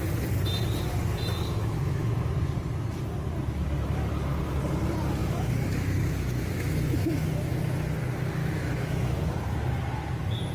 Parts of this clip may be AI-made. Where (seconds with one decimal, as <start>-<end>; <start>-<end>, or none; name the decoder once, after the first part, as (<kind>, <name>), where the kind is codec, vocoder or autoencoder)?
1.6-2.3 (autoencoder, DAC-VAE); 5.2-7.3; 8.4-9.4